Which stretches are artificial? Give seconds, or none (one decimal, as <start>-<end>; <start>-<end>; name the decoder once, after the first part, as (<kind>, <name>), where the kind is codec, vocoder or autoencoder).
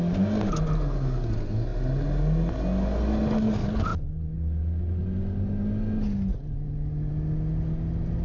none